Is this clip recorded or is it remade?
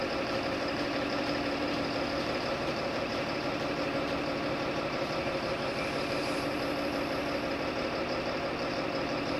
remade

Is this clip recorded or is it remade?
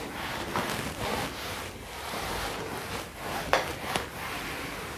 recorded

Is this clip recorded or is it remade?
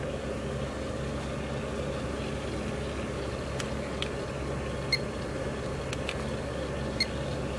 recorded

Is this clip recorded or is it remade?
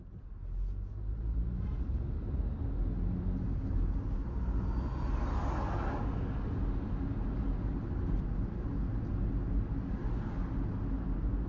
recorded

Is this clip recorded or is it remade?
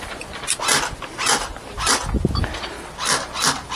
recorded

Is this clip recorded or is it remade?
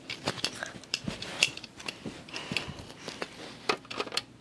recorded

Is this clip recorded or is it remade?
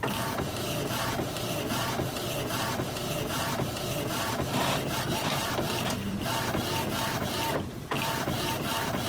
remade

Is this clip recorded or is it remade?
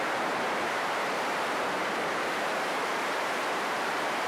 remade